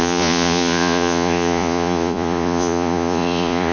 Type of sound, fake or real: fake